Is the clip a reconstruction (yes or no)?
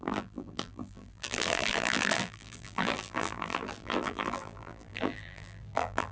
yes